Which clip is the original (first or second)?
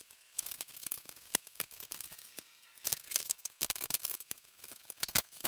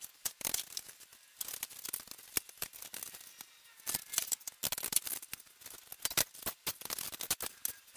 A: second